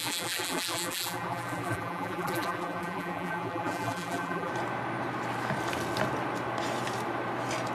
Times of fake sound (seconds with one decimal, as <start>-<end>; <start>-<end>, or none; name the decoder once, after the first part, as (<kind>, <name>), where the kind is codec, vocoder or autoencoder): 0.0-4.5 (vocoder, BigVGAN v2)